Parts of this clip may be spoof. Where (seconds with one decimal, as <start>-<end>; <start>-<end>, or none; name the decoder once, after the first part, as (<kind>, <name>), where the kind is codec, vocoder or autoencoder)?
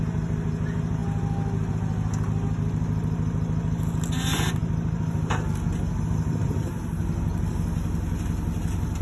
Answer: none